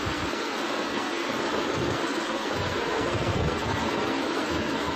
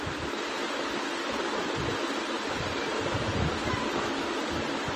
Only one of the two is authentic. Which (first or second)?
second